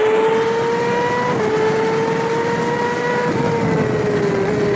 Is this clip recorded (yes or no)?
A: yes